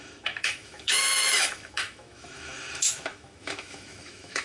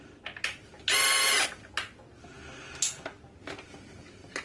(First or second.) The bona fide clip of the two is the second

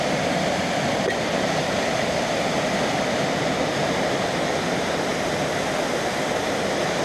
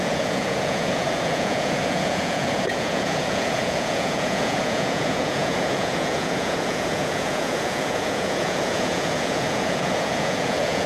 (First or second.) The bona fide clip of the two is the first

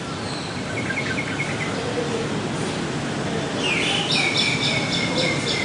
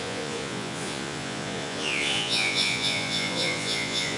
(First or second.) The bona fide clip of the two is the first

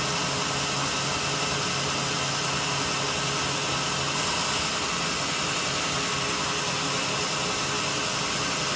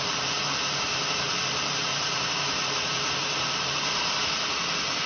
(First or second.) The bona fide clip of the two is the first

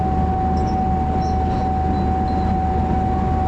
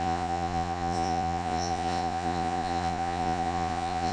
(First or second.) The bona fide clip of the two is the first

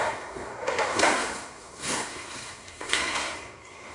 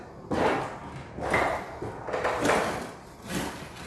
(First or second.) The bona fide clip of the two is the second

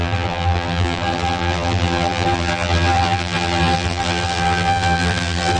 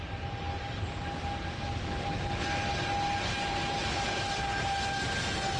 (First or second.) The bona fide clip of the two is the second